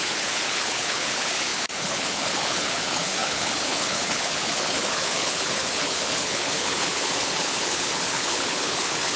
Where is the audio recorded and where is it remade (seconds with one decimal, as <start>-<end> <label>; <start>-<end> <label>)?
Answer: 0.0-9.2 remade